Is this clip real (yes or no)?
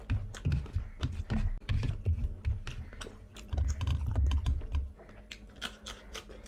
yes